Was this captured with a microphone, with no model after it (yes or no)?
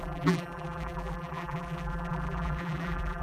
no